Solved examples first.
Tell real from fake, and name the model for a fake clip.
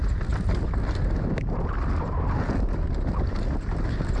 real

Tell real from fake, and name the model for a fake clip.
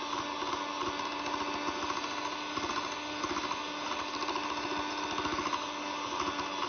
real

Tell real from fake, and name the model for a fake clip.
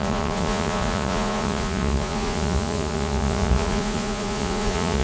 fake, vocoder, Vocos